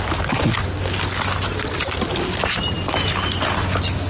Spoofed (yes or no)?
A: no